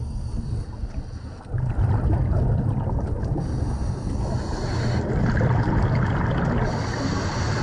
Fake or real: real